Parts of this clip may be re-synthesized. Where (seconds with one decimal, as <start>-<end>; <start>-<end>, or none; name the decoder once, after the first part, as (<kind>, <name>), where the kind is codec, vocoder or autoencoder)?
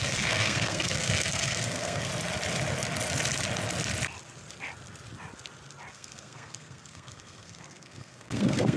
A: 0.0-2.1 (codec, SNAC); 5.9-8.8